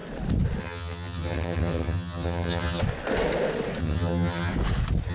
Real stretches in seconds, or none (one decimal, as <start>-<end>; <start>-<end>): 0.0-0.6; 2.8-3.8; 4.5-5.1